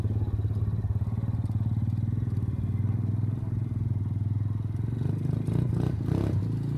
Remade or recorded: recorded